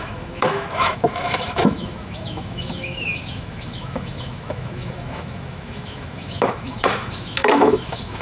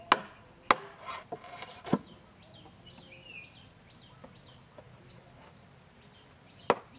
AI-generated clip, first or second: first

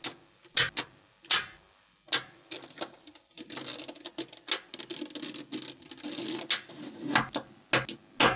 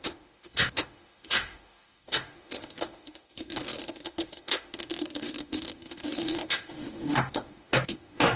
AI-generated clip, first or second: second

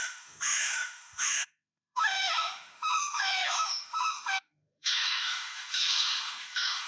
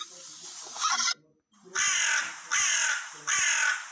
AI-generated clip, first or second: first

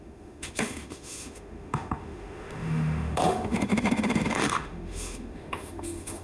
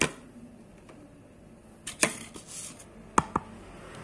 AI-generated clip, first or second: first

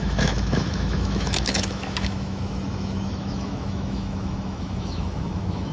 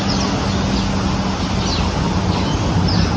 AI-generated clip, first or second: first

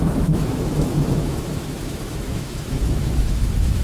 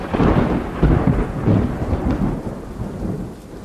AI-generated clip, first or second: first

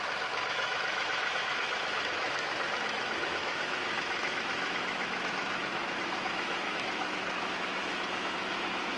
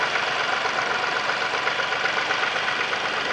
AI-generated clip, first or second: first